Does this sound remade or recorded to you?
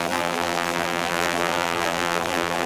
remade